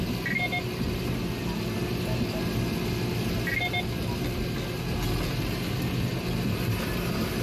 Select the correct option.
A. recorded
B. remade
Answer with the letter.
A